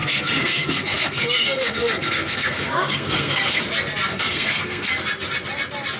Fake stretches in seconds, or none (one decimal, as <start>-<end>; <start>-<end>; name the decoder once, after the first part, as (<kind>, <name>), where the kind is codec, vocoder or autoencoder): 0.0-3.6 (codec, SNAC); 4.1-4.9